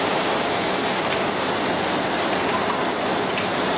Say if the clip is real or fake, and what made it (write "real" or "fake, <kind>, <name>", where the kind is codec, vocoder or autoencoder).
real